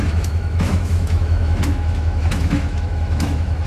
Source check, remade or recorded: remade